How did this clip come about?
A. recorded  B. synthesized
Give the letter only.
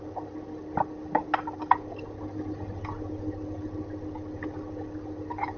A